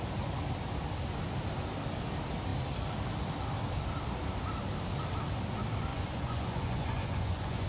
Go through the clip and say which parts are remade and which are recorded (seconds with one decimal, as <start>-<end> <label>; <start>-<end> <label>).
0.0-5.9 recorded; 5.9-7.7 remade